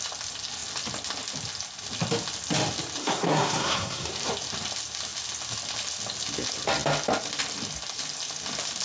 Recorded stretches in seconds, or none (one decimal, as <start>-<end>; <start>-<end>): 0.0-3.0; 4.1-8.8